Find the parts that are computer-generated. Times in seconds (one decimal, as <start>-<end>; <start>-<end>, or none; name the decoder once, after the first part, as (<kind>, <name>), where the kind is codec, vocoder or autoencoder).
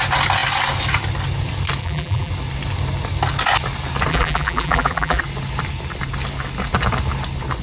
1.8-2.3 (vocoder, BigVGAN v2); 4.1-5.2